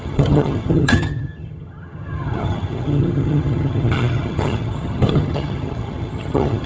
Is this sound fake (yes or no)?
yes